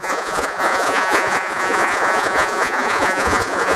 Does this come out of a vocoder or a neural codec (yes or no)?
yes